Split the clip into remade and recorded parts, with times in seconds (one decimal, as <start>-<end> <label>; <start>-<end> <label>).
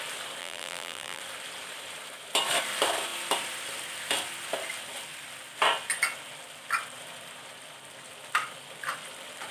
0.0-0.4 recorded; 0.4-1.2 remade; 1.2-9.5 recorded